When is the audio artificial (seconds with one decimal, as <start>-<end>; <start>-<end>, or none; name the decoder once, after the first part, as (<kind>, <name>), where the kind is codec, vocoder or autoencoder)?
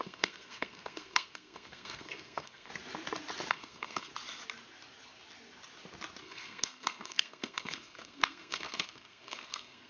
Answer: 0.0-2.7 (codec, SNAC); 3.5-4.1; 6.2-9.9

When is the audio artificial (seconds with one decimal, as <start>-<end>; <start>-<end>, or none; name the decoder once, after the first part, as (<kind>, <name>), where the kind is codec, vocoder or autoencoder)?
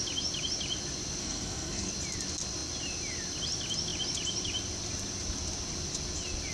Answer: 1.2-1.9 (codec, SNAC)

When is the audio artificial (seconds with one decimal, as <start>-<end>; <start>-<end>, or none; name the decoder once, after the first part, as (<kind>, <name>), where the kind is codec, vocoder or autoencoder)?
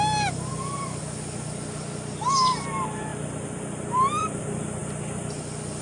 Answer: 0.5-1.0 (vocoder, BigVGAN v2)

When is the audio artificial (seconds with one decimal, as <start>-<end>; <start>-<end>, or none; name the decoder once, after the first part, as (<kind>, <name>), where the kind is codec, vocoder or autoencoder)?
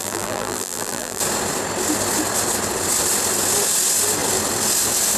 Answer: 0.0-1.2 (vocoder, BigVGAN v2)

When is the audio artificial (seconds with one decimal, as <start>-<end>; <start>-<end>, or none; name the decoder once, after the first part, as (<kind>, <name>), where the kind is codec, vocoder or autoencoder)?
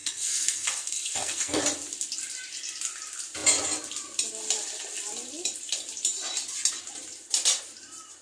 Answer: 0.0-1.6 (codec, SNAC)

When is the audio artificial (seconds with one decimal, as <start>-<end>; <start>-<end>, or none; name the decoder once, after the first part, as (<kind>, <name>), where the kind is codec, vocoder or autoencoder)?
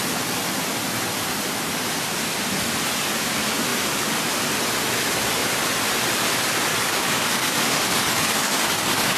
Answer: 6.7-9.2 (codec, DAC)